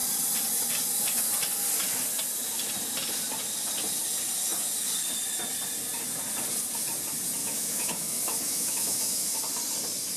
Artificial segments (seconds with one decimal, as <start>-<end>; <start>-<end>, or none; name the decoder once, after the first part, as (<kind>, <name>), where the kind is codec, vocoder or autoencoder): 7.4-9.3 (autoencoder, DAC-VAE)